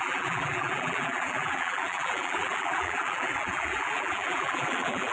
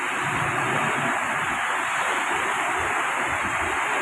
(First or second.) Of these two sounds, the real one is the second